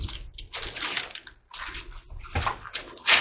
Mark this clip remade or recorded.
recorded